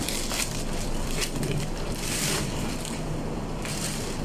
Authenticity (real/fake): fake